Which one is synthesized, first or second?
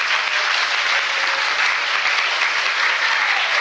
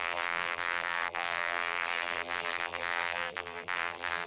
second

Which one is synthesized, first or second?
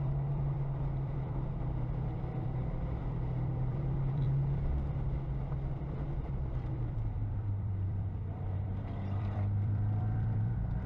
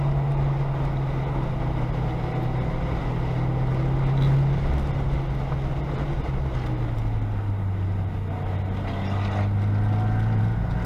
first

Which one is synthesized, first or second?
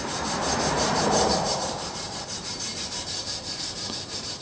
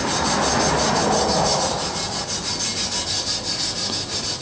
first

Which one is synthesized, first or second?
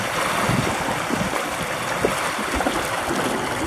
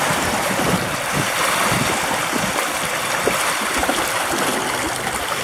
second